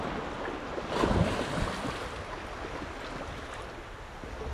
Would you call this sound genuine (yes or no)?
yes